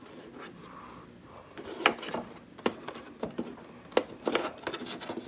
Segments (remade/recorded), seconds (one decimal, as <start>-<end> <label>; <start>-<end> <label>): 0.0-5.3 recorded